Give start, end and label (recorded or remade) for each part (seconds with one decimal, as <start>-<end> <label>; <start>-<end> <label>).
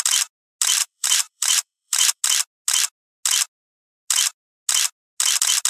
0.0-0.8 recorded; 0.8-2.2 remade; 2.2-5.7 recorded